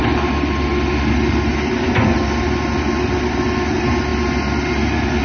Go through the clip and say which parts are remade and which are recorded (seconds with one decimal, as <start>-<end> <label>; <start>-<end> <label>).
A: 0.0-5.2 recorded